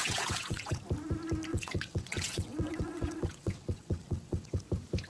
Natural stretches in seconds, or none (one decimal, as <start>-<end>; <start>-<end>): 0.8-1.5; 4.6-5.1